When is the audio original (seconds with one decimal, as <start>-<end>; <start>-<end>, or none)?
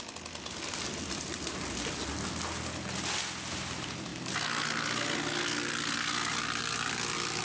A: 0.0-7.4